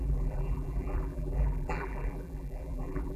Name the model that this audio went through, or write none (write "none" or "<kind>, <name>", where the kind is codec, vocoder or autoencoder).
vocoder, BigVGAN v2